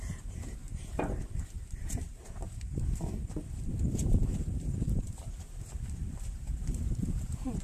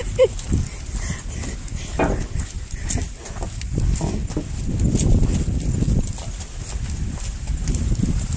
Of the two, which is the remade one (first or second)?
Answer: first